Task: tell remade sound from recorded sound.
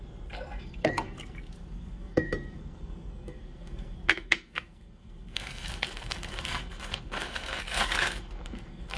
remade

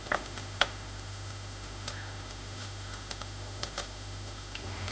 remade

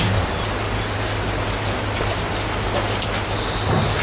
recorded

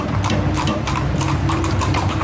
remade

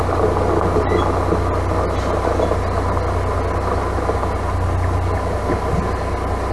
recorded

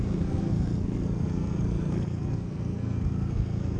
remade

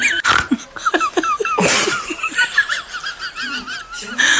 recorded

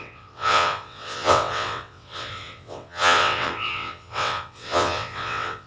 remade